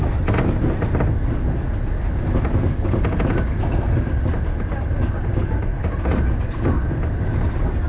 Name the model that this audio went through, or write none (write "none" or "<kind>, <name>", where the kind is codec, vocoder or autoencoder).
none